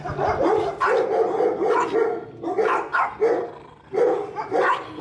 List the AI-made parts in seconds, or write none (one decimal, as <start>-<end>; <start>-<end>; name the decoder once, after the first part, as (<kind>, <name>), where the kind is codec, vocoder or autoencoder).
2.9-5.0 (vocoder, BigVGAN v2)